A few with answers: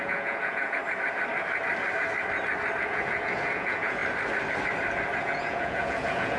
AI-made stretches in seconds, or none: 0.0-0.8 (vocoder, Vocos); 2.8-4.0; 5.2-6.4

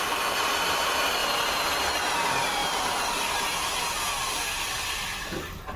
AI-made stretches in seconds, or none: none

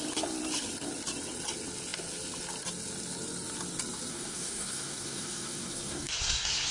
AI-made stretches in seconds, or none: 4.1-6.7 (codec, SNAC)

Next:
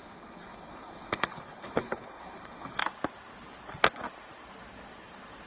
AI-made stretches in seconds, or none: 0.0-2.8 (codec, HILCodec)

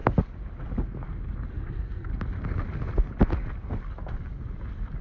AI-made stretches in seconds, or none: 1.5-2.1 (codec, SNAC)

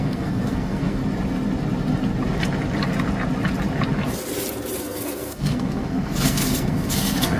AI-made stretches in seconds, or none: 0.0-1.0 (codec, SNAC); 4.8-7.4